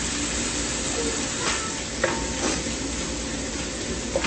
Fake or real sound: real